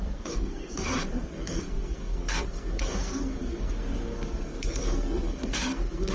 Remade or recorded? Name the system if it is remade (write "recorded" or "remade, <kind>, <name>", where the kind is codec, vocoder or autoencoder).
remade, codec, SNAC